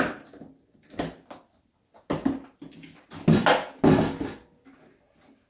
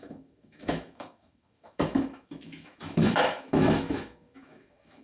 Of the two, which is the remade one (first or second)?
second